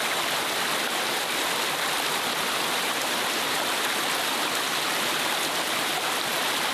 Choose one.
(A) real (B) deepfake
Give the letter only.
A